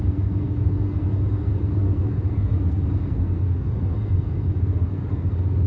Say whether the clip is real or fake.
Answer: fake